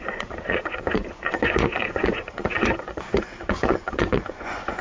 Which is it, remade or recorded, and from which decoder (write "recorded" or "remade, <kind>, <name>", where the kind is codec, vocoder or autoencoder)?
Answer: remade, vocoder, Vocos